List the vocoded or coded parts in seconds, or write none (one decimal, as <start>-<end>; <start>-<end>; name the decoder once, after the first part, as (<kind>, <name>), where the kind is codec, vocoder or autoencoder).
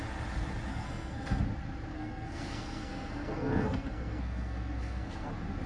0.7-1.4 (codec, SNAC); 1.9-5.3